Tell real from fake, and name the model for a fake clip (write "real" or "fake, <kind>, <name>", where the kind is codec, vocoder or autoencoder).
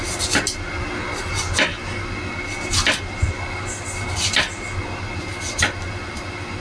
real